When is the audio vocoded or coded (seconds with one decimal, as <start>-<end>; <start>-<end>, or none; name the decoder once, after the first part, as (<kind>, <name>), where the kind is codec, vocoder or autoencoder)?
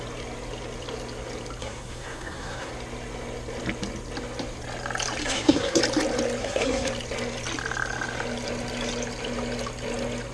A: 1.6-2.7 (codec, SNAC); 5.2-5.8; 6.4-6.9